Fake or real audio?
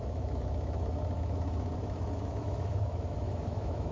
fake